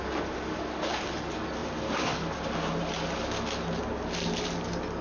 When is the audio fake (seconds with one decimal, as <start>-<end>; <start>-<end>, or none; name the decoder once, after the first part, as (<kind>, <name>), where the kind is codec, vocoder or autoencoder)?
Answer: none